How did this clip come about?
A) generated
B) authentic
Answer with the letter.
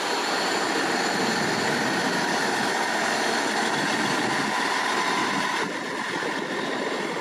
B